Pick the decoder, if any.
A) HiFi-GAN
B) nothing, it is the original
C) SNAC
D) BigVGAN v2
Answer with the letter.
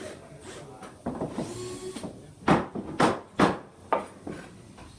B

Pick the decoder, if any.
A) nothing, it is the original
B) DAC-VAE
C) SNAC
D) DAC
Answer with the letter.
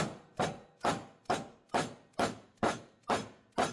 A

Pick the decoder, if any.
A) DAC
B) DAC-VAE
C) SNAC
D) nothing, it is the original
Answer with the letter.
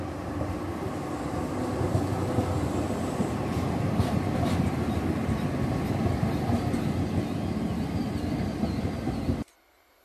D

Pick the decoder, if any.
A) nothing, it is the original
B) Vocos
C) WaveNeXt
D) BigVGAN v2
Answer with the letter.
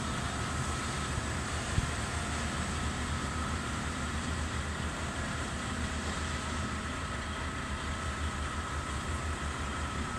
D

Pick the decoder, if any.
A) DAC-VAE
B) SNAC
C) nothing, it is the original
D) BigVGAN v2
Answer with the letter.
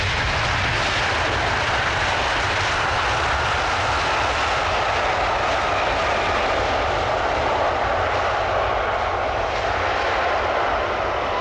C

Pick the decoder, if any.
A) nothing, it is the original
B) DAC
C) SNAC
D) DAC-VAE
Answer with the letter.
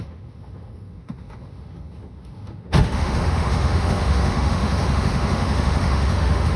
D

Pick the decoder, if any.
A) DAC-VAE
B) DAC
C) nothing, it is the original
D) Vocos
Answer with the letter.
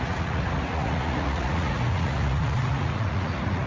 D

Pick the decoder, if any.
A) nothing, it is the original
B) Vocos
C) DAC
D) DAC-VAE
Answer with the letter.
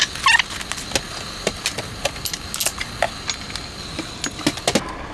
A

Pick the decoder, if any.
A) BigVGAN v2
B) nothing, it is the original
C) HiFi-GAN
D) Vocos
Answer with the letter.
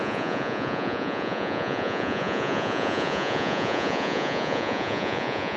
D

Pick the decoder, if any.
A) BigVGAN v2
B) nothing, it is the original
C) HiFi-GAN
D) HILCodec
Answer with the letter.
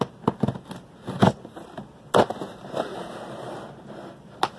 B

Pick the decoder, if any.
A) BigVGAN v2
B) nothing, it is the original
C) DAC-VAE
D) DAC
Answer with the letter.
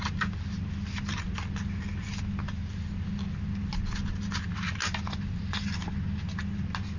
B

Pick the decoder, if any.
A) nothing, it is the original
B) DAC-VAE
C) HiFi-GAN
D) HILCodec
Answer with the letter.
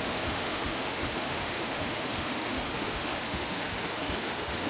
B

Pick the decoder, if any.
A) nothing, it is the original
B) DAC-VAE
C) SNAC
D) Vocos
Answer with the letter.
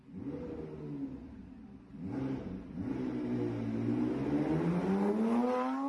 A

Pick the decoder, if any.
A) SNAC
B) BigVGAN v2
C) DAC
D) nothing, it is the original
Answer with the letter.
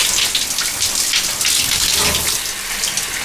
D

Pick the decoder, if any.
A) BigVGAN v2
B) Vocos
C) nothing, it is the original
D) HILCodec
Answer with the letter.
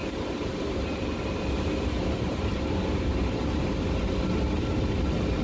A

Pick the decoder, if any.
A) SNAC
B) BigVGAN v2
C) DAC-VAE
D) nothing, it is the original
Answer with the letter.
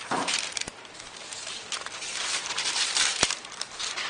B